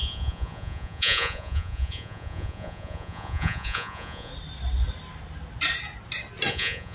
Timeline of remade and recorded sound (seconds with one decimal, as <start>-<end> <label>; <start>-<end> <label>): 0.0-4.3 remade; 4.3-6.5 recorded; 6.5-6.9 remade